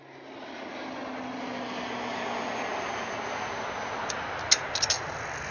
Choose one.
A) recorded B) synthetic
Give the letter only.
A